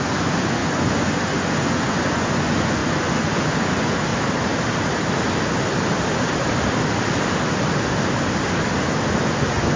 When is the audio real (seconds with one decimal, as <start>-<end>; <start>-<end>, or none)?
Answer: 4.1-9.2